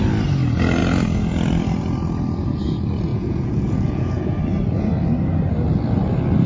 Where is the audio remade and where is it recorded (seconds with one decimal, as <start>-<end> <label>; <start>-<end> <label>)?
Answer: 0.0-3.1 recorded; 3.1-4.4 remade; 4.4-6.5 recorded